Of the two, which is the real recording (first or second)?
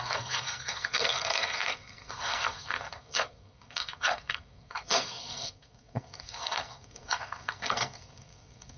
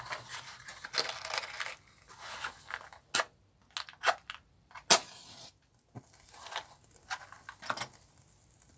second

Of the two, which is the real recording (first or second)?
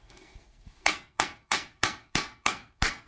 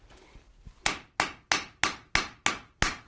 second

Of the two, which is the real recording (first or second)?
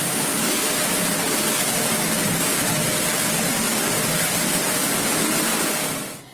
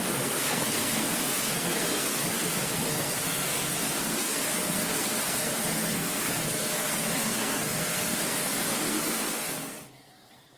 first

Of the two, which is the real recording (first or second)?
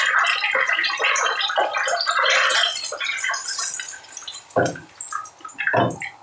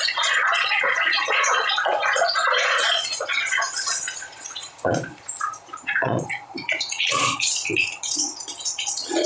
first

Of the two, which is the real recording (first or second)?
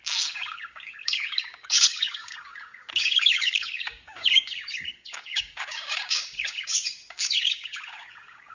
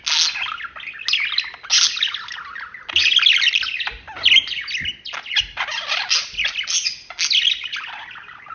second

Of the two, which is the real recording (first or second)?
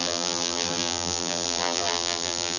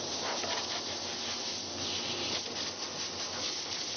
second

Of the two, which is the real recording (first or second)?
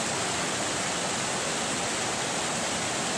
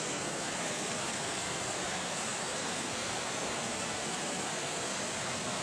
first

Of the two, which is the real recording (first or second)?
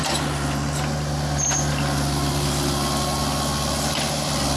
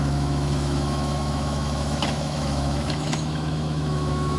first